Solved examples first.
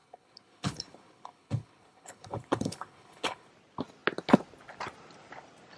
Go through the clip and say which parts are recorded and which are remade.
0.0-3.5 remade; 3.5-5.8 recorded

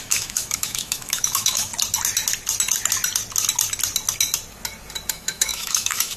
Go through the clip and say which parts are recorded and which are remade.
0.0-1.7 remade; 1.7-5.1 recorded; 5.1-6.2 remade